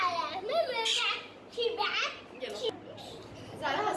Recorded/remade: recorded